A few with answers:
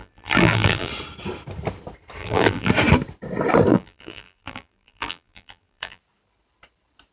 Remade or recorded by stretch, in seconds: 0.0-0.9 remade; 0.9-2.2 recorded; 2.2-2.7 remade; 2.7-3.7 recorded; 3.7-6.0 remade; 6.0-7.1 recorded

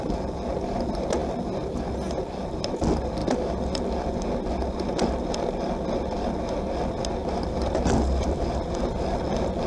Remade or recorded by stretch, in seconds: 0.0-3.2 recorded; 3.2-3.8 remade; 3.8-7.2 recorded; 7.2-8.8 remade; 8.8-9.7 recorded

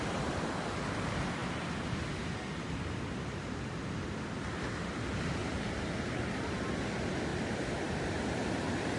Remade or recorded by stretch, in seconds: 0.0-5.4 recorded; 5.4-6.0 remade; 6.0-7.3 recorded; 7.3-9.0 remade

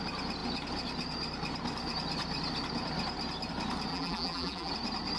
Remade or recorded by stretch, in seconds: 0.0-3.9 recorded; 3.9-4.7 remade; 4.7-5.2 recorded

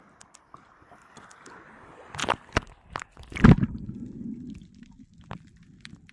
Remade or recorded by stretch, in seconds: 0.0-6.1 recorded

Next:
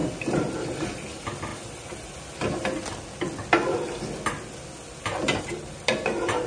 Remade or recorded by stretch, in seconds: 0.0-0.5 recorded; 0.5-1.5 remade; 1.5-5.4 recorded; 5.4-6.5 remade

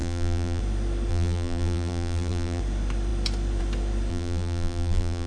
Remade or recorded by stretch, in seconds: 0.0-0.6 remade; 0.6-1.1 recorded; 1.1-2.6 remade; 2.6-4.1 recorded; 4.1-5.3 remade

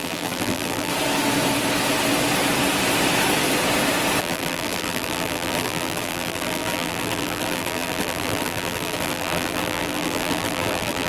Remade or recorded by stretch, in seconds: 0.0-0.9 remade; 0.9-4.2 recorded; 4.2-11.1 remade